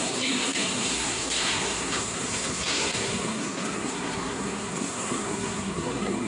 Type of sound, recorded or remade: remade